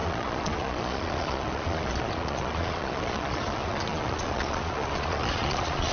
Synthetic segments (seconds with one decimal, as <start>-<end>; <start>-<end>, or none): 0.0-5.9